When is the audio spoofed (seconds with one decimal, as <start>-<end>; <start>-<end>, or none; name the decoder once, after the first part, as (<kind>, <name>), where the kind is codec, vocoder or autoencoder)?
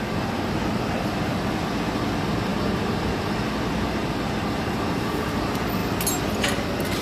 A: none